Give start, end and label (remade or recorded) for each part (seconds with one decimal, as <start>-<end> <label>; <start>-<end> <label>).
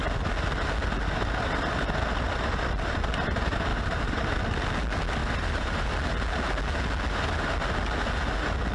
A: 0.0-3.7 recorded; 3.7-4.3 remade; 4.3-5.2 recorded; 5.2-5.9 remade; 5.9-8.7 recorded